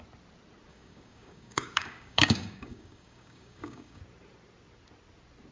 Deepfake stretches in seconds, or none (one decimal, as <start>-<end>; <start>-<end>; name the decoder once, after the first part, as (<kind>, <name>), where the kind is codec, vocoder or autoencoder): 0.7-4.0 (codec, DAC)